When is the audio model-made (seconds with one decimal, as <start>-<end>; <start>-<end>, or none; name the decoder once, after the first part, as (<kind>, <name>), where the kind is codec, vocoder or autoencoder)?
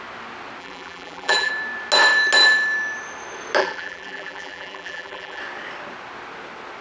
0.6-1.5 (vocoder, BigVGAN v2); 3.6-5.4